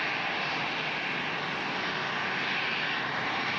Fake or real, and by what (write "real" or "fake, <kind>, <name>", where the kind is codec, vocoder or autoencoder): real